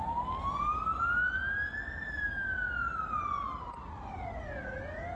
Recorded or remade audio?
recorded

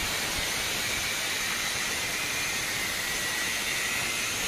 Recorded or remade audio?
remade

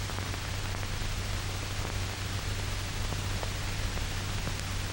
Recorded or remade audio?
recorded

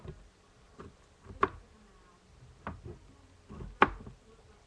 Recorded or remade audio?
recorded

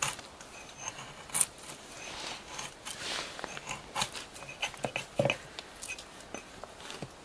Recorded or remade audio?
recorded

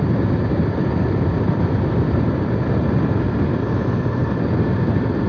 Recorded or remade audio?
remade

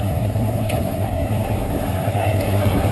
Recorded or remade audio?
remade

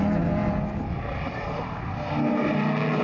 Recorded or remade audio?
recorded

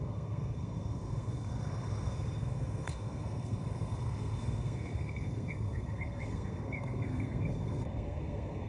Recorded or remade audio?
remade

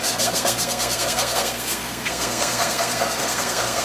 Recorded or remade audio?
remade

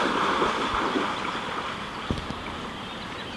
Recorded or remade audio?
recorded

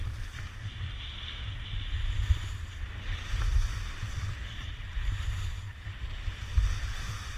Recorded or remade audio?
recorded